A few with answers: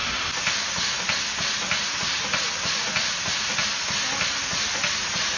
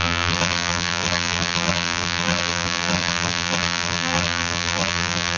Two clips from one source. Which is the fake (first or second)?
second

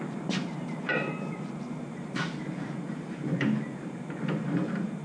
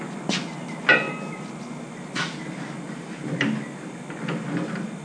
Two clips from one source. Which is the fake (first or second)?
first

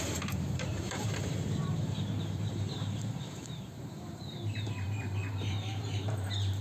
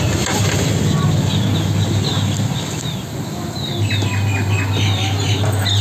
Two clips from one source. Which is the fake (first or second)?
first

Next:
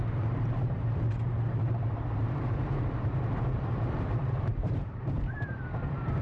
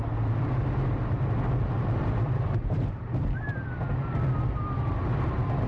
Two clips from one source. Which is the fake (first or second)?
first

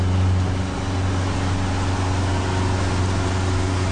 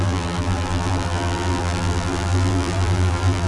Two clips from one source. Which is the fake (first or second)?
second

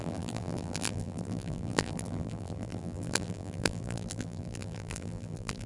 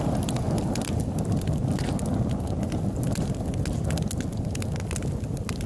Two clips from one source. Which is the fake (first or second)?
first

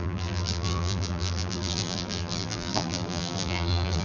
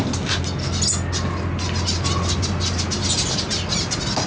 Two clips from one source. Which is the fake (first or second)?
first